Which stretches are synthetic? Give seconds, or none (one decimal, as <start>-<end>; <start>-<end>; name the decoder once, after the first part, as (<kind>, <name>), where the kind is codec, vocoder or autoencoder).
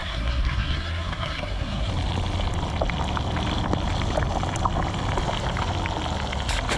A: 0.0-1.9 (codec, SNAC)